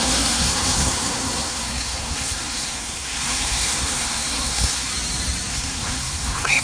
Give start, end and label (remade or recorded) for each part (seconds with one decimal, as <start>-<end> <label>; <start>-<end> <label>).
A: 0.0-4.9 remade; 4.9-5.5 recorded; 5.5-6.6 remade